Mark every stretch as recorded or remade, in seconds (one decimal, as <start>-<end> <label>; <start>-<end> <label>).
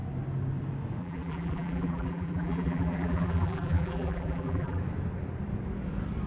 0.0-1.0 recorded; 1.0-4.8 remade; 4.8-6.3 recorded